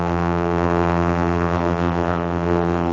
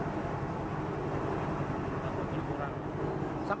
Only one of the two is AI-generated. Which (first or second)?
first